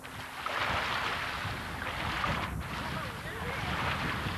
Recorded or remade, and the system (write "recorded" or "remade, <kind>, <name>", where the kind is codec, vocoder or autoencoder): recorded